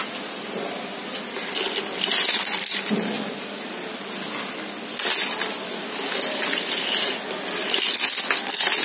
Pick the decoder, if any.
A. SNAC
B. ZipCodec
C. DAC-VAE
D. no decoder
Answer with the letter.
D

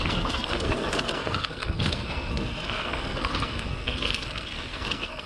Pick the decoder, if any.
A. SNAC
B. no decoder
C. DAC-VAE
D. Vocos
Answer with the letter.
A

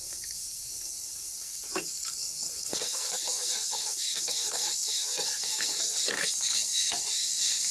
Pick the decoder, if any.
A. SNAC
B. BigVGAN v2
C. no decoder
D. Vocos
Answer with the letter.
A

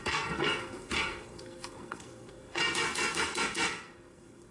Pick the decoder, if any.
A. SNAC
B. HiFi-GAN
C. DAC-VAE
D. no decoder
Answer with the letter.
A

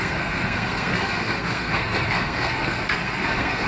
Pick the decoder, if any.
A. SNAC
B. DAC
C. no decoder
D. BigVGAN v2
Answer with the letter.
A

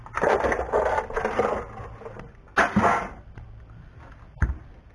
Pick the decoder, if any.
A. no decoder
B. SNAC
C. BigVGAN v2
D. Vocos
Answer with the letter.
A